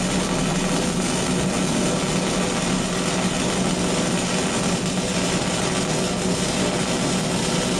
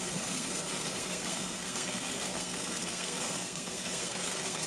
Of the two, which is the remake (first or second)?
second